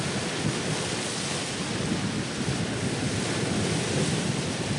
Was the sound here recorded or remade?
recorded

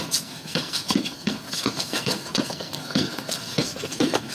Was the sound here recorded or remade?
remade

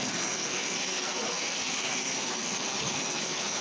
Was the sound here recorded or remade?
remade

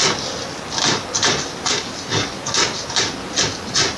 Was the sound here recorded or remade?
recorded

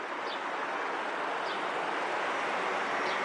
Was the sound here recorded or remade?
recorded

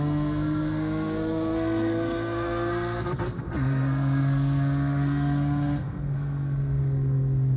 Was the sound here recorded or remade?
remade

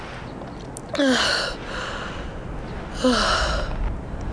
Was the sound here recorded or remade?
recorded